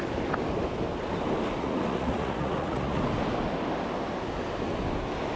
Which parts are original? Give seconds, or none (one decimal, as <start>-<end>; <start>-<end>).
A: 0.0-1.6; 3.0-5.4